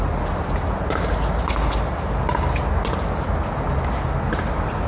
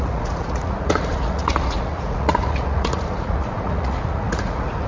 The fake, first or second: second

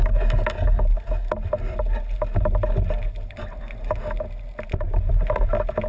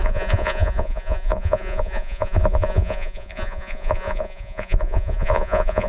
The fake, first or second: second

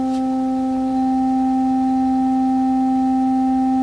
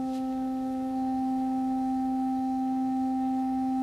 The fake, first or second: second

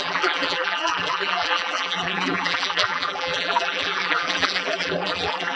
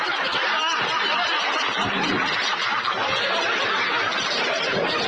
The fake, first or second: first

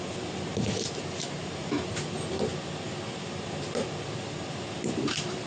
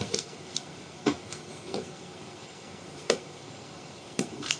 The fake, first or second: second